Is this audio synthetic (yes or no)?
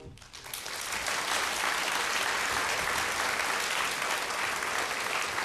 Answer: no